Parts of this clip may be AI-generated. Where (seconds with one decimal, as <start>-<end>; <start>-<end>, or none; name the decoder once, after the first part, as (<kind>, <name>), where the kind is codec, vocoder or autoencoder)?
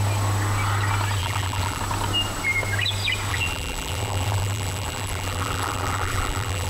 1.2-1.8 (vocoder, BigVGAN v2); 3.3-6.7